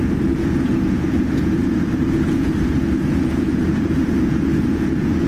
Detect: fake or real fake